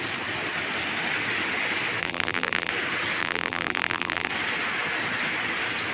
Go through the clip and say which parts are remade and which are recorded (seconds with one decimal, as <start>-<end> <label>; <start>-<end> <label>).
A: 0.0-2.0 recorded; 2.0-2.7 remade; 2.7-3.2 recorded; 3.2-4.3 remade; 4.3-5.9 recorded